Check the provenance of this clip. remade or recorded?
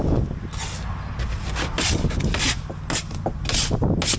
recorded